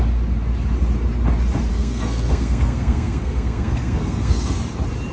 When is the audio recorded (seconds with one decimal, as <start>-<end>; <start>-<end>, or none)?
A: 0.0-1.7; 4.6-5.1